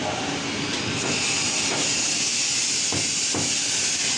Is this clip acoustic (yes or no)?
yes